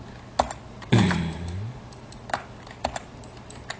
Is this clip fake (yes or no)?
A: no